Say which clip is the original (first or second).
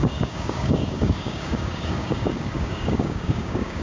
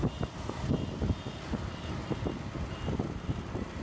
second